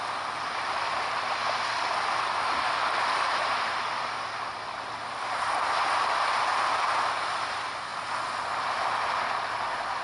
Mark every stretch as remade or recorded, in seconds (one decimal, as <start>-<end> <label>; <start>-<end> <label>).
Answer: 0.0-10.0 recorded